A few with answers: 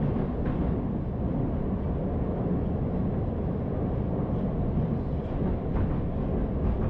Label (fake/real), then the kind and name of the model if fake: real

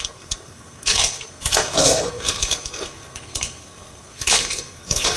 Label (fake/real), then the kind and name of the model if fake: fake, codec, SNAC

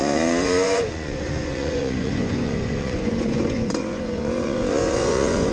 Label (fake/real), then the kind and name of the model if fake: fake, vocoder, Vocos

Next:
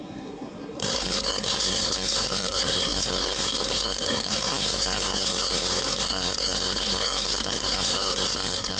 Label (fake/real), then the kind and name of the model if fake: fake, codec, SNAC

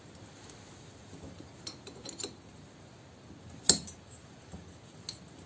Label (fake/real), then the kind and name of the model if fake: real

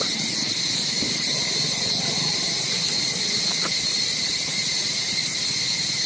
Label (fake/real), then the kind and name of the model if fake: real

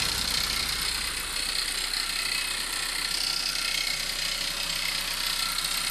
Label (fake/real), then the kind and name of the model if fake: real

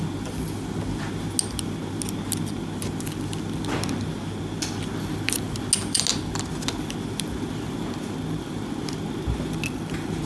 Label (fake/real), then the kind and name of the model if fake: real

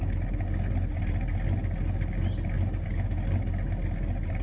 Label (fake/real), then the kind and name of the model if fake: real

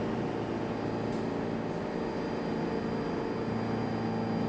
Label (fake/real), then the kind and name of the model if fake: real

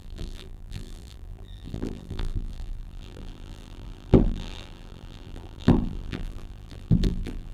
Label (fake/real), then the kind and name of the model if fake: fake, vocoder, BigVGAN v2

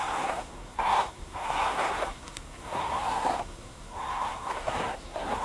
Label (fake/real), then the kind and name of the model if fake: fake, codec, SNAC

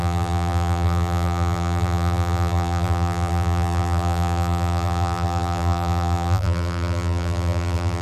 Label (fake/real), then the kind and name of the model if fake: fake, vocoder, BigVGAN v2